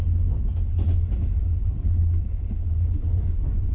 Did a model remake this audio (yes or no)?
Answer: no